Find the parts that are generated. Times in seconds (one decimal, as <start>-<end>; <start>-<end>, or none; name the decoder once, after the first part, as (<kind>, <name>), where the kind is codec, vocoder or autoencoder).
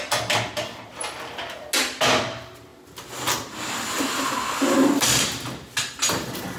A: none